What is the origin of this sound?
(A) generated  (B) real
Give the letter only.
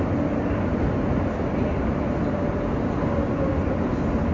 B